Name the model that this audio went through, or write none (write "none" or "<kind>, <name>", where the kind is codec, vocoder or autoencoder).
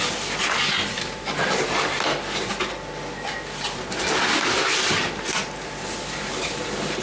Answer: none